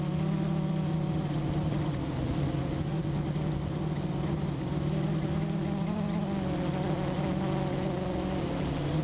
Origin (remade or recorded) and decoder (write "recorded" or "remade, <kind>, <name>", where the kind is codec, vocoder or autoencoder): recorded